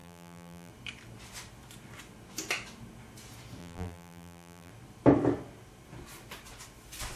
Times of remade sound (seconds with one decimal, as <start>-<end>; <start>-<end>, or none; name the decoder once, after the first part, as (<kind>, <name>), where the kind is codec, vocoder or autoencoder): 0.0-0.7 (vocoder, BigVGAN v2); 3.6-4.7